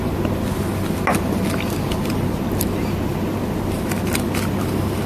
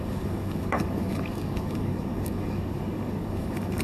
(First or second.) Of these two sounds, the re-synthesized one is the second